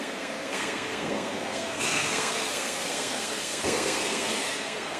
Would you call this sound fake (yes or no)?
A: yes